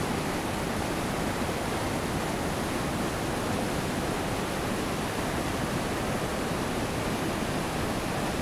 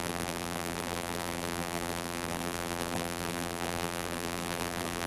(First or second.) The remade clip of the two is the second